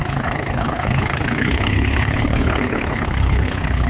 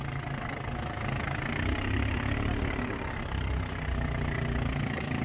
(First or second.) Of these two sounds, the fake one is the first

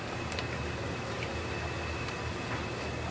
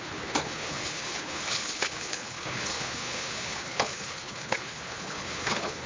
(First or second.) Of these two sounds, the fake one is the second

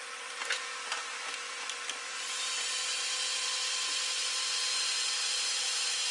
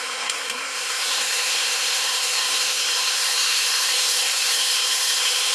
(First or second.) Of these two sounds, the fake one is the second